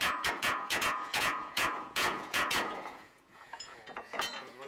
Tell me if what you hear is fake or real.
fake